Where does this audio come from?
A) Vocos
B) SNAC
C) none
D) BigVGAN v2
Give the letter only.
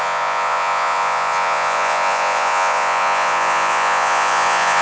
A